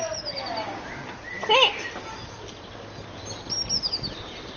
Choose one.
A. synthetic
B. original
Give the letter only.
B